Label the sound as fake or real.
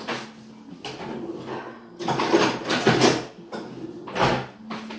real